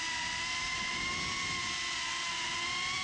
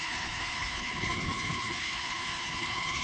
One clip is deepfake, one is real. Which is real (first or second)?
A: first